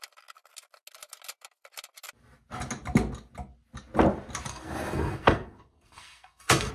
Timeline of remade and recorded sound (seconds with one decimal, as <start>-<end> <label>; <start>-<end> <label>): 0.0-4.5 recorded; 4.5-6.7 remade